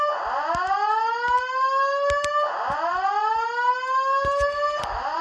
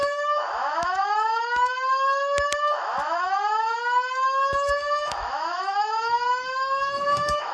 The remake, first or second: second